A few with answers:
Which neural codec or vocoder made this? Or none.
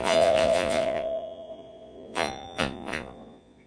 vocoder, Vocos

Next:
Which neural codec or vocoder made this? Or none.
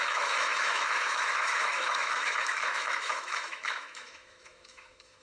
autoencoder, DAC-VAE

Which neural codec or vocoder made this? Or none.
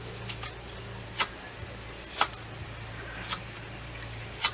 none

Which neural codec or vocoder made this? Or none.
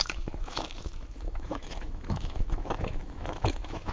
autoencoder, DAC-VAE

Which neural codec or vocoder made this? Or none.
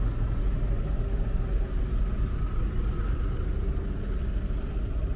none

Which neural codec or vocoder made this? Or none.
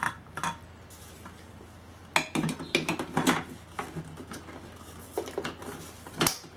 none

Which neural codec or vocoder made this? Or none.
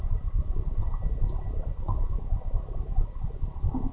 none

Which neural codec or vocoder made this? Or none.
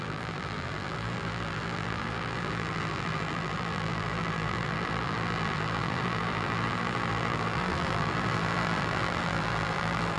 vocoder, BigVGAN v2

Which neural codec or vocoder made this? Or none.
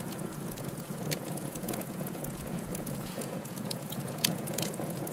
vocoder, Vocos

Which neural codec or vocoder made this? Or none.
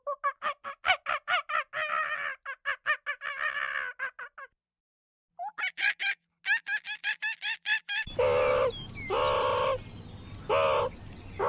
none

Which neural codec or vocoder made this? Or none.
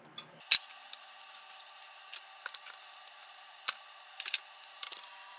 vocoder, BigVGAN v2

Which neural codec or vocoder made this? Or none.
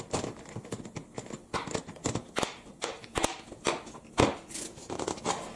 none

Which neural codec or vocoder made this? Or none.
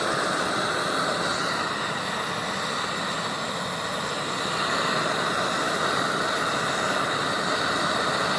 none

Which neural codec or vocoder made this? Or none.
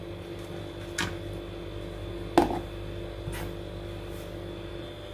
none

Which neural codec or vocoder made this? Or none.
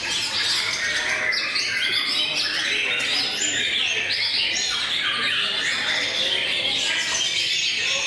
none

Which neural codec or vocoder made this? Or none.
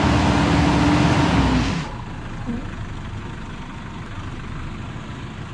none